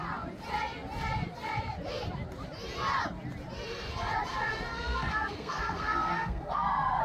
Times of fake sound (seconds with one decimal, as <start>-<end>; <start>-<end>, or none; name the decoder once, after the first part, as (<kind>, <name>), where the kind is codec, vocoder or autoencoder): 4.3-7.0 (codec, SNAC)